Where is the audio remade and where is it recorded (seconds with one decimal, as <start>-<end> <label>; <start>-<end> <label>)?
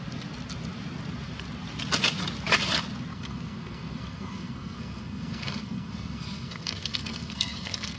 0.0-3.1 recorded; 3.1-8.0 remade